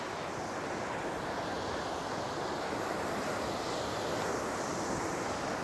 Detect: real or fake real